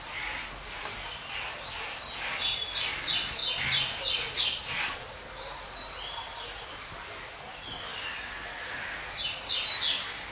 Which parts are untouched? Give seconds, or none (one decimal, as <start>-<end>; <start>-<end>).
0.0-10.3